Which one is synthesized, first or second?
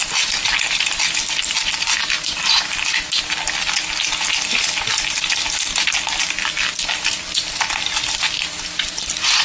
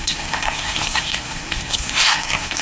second